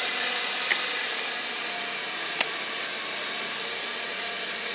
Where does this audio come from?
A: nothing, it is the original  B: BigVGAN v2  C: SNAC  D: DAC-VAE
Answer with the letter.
A